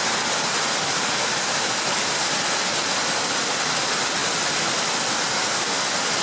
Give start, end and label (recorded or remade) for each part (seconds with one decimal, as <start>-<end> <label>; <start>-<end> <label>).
0.0-6.2 recorded